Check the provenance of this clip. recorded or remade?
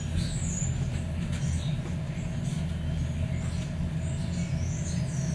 recorded